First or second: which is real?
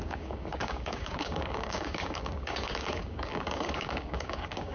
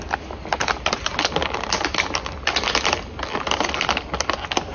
second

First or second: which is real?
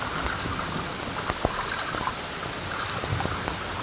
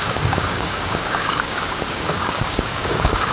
first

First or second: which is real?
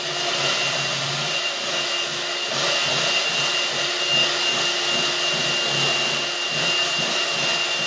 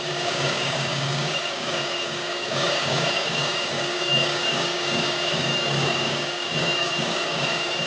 first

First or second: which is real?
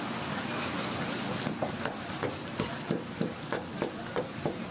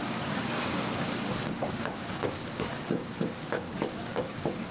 first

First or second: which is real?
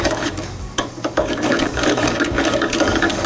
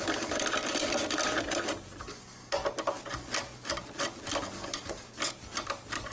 second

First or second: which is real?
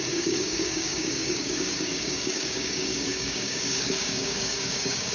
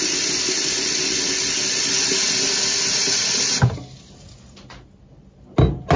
second